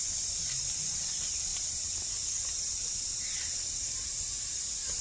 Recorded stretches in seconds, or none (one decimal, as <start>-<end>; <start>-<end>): 0.0-5.0